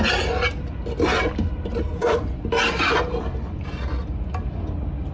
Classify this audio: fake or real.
real